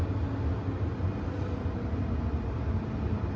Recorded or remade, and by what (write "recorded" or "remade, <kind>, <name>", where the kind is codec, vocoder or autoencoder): recorded